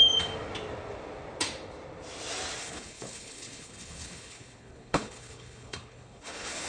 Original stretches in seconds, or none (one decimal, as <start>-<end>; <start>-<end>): 0.0-2.6